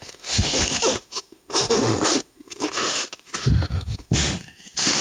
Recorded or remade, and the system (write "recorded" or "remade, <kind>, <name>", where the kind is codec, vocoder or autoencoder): remade, autoencoder, DAC-VAE